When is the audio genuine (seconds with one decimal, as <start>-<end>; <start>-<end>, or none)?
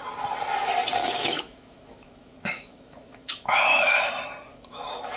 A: 0.0-1.0; 4.1-4.5